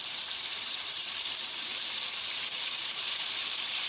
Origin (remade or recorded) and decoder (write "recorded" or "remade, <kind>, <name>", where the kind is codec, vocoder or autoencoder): remade, vocoder, BigVGAN v2